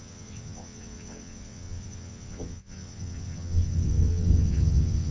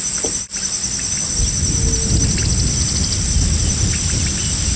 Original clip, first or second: second